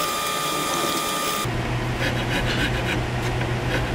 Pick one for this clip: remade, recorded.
recorded